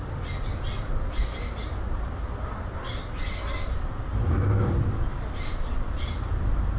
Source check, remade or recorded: recorded